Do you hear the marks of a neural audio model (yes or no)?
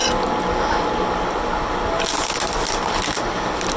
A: no